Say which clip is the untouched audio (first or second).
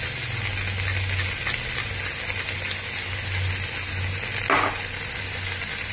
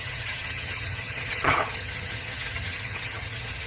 first